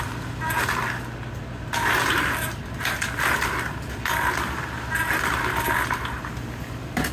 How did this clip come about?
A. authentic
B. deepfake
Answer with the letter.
A